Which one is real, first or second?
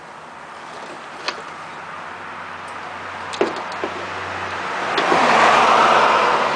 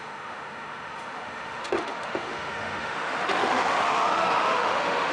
first